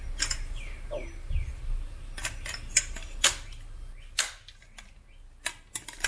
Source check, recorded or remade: recorded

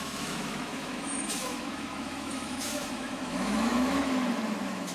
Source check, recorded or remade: remade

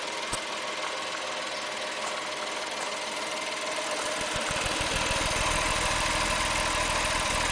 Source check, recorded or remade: recorded